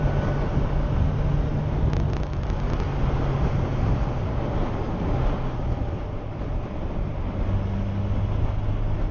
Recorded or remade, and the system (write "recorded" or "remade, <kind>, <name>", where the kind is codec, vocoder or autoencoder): recorded